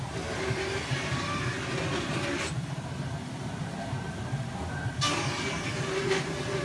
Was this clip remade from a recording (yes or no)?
no